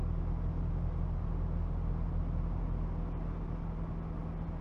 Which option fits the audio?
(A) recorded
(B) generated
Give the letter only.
A